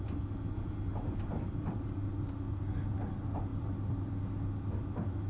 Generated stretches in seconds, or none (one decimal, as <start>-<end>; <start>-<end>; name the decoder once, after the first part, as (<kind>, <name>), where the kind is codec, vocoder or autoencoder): 3.5-4.1 (vocoder, BigVGAN v2)